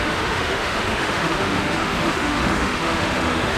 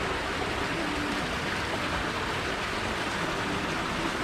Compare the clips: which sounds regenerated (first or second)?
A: first